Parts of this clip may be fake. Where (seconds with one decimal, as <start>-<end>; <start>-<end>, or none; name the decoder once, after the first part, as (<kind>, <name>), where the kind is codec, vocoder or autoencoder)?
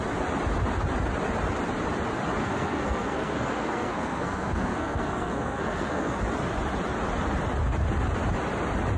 2.4-6.2 (codec, SNAC)